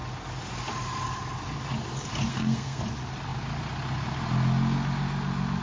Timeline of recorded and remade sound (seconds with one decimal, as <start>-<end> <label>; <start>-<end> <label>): 0.0-2.3 recorded; 2.3-2.8 remade; 2.8-5.6 recorded